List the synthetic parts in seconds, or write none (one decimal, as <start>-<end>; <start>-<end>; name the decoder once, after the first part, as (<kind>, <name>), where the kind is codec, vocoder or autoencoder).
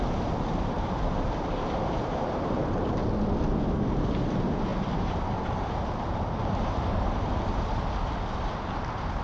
0.0-3.0 (vocoder, BigVGAN v2); 3.8-9.2